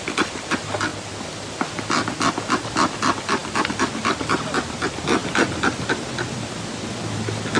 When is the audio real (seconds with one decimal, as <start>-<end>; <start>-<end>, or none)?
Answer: 0.0-3.4; 3.9-5.2; 7.0-7.6